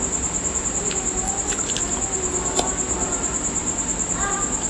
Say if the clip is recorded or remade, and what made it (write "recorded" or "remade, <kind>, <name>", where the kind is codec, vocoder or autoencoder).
recorded